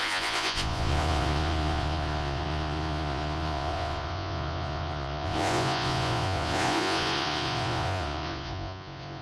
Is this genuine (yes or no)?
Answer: no